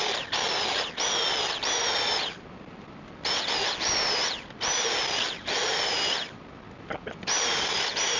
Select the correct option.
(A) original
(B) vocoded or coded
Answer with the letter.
A